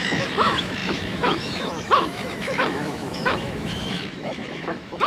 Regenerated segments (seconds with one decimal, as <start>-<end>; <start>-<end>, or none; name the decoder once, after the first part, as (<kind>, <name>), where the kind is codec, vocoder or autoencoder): 0.0-5.1 (autoencoder, DAC-VAE)